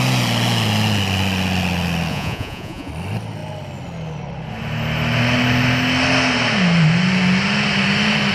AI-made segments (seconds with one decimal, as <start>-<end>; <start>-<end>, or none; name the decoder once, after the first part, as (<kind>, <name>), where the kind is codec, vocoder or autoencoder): 2.1-2.9 (vocoder, Vocos)

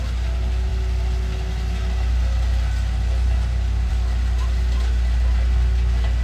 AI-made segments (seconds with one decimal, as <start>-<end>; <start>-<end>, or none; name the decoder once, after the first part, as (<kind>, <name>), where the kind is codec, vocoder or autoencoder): none

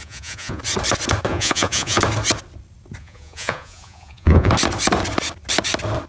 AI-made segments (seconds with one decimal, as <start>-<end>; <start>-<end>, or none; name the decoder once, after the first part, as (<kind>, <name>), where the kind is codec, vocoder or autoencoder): 0.0-0.6 (vocoder, Vocos); 1.3-2.0; 3.0-4.5

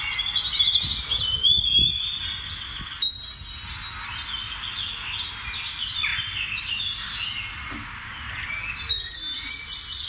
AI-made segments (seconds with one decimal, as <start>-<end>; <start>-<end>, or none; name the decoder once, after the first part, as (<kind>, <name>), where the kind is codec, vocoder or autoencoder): none